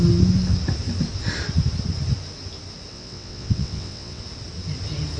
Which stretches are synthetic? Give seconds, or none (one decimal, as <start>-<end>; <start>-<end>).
2.9-4.2